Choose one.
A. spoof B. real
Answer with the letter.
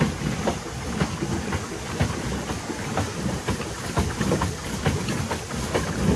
B